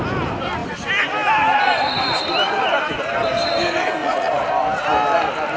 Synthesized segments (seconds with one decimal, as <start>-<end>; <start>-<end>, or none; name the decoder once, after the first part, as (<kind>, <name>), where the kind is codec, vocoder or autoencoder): 4.0-4.5 (vocoder, Vocos)